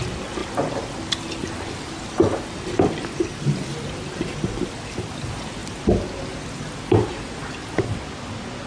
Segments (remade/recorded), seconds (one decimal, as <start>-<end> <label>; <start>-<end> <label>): 0.0-8.7 recorded